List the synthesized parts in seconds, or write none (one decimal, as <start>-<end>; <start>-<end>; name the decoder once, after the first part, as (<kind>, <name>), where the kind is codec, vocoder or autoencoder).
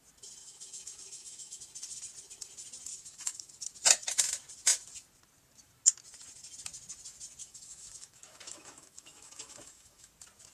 0.4-1.6 (autoencoder, DAC-VAE); 2.9-3.5; 7.4-10.1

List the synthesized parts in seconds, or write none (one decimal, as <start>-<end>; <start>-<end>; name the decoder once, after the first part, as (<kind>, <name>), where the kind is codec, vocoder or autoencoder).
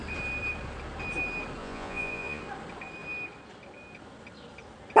1.6-2.4 (vocoder, Vocos)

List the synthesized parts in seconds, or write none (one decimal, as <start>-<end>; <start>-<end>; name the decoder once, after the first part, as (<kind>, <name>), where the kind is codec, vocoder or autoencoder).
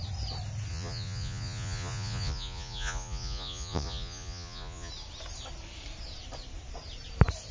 0.7-4.9 (vocoder, Vocos)